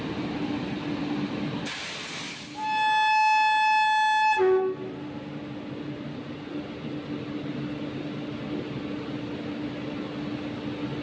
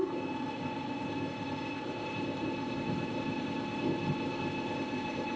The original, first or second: first